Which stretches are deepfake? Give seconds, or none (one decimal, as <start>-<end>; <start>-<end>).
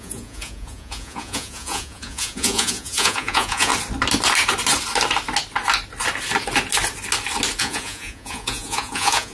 0.0-3.7; 7.6-9.3